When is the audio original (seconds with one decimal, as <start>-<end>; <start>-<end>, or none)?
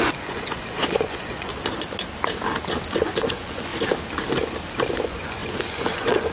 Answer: 1.5-3.0; 3.7-5.0